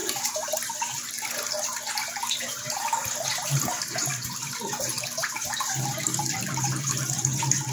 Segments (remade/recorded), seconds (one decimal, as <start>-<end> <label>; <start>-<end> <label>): 0.0-0.9 remade; 0.9-2.5 recorded; 2.5-3.6 remade; 3.6-7.7 recorded